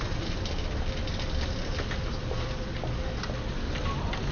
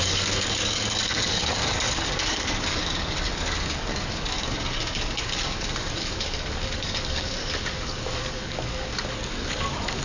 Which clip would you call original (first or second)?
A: first